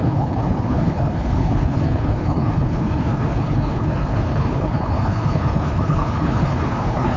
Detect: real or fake fake